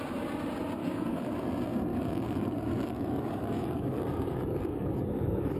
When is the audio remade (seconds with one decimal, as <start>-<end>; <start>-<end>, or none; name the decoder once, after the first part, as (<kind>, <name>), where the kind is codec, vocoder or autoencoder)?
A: 0.8-1.5 (codec, DAC); 1.9-5.6